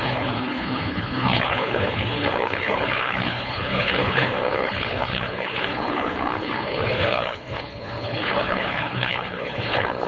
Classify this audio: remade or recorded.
remade